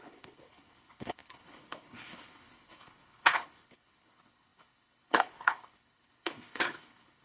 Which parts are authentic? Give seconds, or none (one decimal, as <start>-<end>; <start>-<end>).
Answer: none